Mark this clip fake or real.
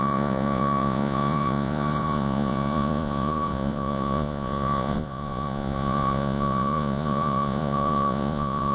fake